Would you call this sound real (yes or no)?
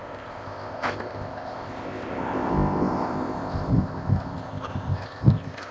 no